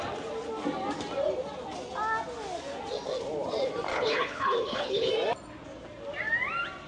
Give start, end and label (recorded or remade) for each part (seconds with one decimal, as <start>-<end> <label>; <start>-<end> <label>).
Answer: 0.0-3.9 recorded; 3.9-5.1 remade; 5.1-6.9 recorded